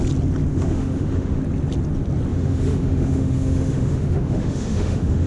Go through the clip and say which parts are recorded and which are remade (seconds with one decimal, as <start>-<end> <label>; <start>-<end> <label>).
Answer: 0.0-0.5 recorded; 0.5-1.4 remade; 1.4-2.3 recorded; 2.3-5.3 remade